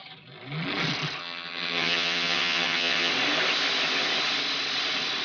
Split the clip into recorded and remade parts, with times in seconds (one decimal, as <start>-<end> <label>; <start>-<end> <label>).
0.0-1.2 recorded; 1.2-3.1 remade; 3.1-5.2 recorded